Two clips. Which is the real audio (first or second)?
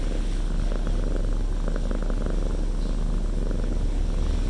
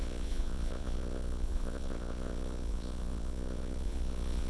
first